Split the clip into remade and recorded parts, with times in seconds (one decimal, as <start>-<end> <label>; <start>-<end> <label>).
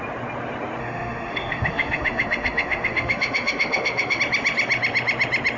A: 0.0-0.8 recorded; 0.8-4.2 remade; 4.2-5.6 recorded